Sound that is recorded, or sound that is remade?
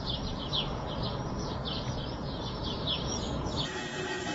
remade